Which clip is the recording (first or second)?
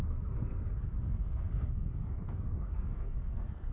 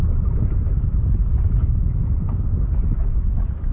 second